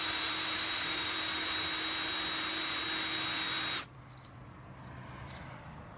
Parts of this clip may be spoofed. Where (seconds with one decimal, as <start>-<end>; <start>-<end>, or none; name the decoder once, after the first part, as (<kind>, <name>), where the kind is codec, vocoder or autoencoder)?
0.0-1.6 (vocoder, BigVGAN v2); 5.2-6.0